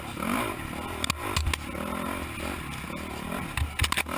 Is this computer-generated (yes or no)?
no